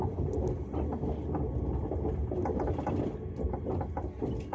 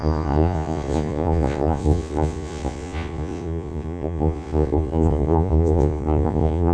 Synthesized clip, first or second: second